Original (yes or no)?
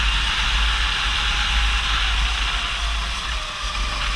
yes